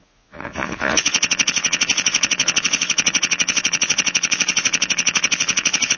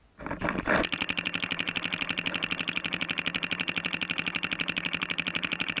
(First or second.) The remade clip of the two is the first